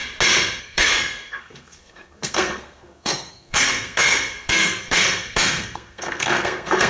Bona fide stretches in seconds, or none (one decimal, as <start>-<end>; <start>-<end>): 0.0-0.6

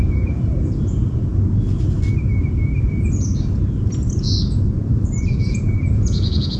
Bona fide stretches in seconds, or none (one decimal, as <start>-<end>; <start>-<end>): 1.3-5.3

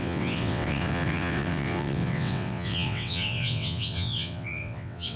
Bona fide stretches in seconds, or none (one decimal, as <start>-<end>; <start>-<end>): none

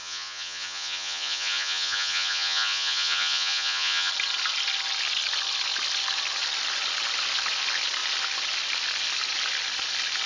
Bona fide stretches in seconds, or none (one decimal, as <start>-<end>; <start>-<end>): 4.1-10.3

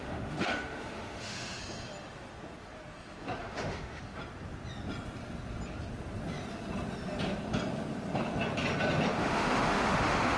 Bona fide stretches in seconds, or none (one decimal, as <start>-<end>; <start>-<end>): 1.6-3.4; 4.0-9.2